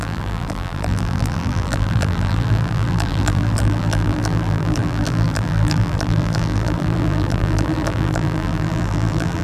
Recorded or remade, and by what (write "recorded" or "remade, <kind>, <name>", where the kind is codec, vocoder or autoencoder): remade, vocoder, BigVGAN v2